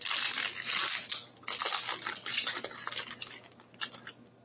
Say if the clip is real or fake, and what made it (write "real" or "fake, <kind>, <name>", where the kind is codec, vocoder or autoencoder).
real